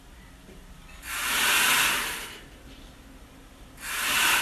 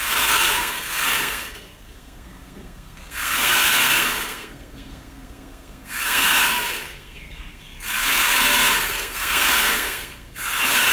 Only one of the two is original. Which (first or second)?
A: first